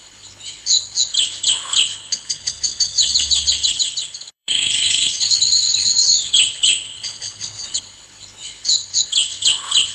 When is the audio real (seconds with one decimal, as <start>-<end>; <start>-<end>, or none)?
none